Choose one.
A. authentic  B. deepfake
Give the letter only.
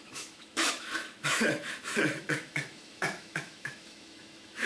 B